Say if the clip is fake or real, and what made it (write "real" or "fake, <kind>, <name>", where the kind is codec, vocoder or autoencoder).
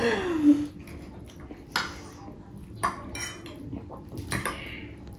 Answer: real